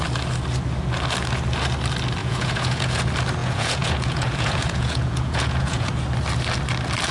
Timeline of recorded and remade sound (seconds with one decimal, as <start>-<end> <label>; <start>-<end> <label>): 0.0-2.2 recorded; 2.2-3.0 remade; 3.0-3.4 recorded; 3.4-5.9 remade; 5.9-7.1 recorded